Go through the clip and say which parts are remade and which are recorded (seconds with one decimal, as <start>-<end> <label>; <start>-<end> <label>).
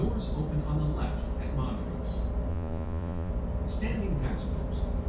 0.0-2.5 recorded; 2.5-3.3 remade; 3.3-5.1 recorded